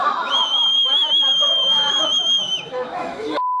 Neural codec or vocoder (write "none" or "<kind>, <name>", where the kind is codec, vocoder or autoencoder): autoencoder, DAC-VAE